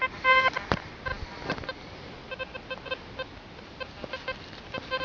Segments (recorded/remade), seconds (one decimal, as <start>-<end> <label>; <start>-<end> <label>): 0.0-1.1 remade; 1.1-4.1 recorded; 4.1-5.0 remade

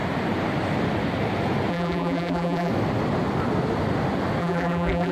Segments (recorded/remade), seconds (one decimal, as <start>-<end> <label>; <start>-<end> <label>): 0.0-1.7 recorded; 1.7-2.7 remade; 2.7-4.4 recorded; 4.4-5.1 remade

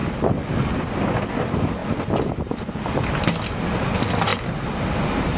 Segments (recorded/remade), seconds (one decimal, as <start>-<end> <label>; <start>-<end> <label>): 0.0-0.5 remade; 0.5-1.8 recorded; 1.8-3.0 remade; 3.0-4.3 recorded; 4.3-5.0 remade; 5.0-5.4 recorded

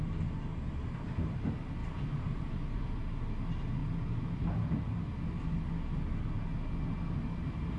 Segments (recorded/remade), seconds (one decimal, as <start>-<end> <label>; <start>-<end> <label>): 0.0-0.5 recorded; 0.5-1.4 remade; 1.4-1.8 recorded; 1.8-2.5 remade; 2.5-7.8 recorded

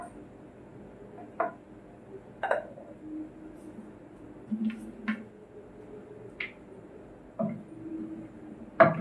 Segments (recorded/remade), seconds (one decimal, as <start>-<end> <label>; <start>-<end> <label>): 0.0-9.0 recorded

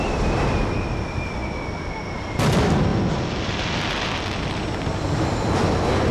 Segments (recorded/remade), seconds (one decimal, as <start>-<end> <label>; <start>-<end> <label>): 0.0-1.4 remade; 1.4-2.0 recorded; 2.0-2.9 remade; 2.9-4.4 recorded; 4.4-6.1 remade